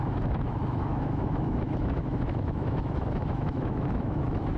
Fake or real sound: fake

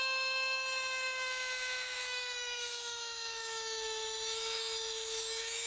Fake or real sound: fake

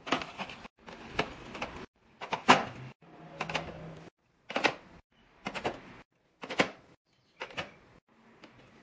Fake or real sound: real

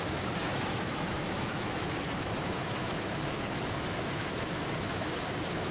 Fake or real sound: fake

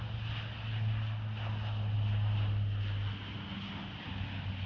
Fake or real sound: real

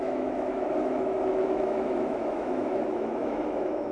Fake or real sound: fake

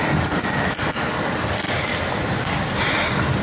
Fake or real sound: real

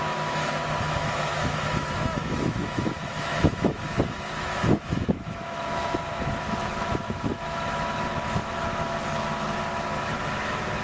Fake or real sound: fake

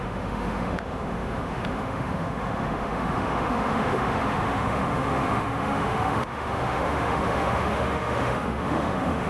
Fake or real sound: fake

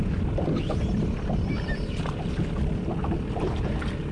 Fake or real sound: real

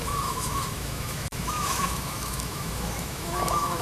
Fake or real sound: fake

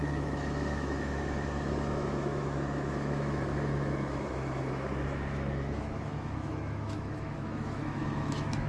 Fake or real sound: fake